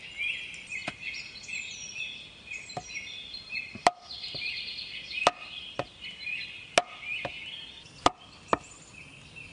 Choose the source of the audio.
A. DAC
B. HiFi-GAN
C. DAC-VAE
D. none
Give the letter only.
D